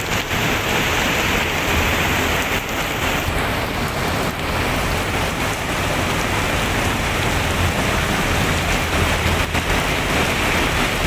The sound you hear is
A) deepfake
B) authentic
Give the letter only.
A